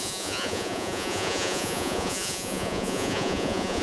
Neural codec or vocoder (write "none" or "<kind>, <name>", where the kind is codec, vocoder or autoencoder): vocoder, Vocos